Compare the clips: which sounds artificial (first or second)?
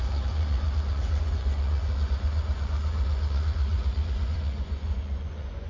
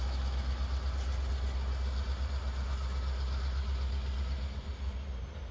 first